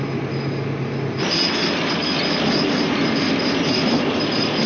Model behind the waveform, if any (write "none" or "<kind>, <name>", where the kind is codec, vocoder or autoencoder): none